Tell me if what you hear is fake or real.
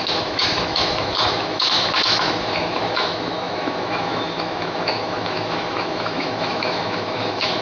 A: fake